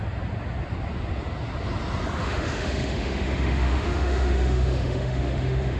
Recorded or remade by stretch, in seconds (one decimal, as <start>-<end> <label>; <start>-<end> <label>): 0.0-2.2 recorded; 2.2-5.8 remade